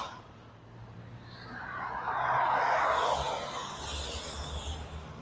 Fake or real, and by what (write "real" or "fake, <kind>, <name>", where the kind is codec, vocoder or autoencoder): real